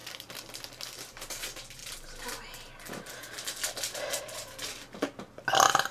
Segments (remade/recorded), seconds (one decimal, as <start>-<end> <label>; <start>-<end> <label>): 0.0-5.9 recorded